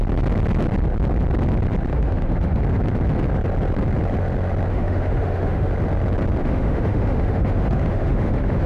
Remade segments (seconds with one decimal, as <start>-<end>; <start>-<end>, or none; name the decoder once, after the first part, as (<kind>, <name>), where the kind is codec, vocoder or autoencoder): 1.9-2.6 (autoencoder, DAC-VAE); 4.7-5.7; 6.4-8.7